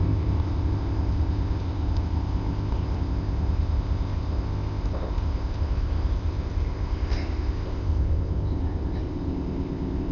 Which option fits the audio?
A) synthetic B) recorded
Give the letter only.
A